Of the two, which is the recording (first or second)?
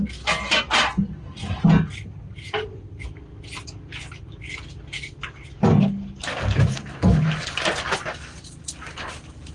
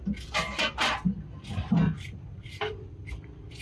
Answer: first